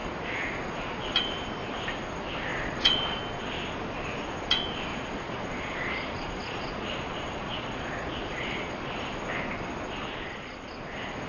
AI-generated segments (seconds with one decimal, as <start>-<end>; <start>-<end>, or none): 0.0-1.0; 2.5-3.2; 4.9-9.0